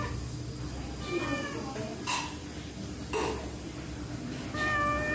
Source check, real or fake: real